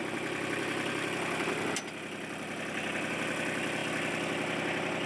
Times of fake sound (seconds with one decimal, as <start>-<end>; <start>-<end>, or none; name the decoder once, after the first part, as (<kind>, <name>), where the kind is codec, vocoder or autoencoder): none